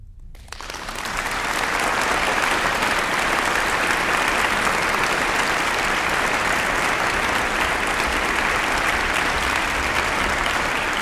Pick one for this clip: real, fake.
real